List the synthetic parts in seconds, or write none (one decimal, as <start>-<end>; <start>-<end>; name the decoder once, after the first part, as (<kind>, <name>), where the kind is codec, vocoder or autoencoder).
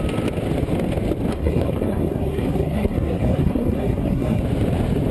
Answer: 1.3-4.4 (codec, SNAC)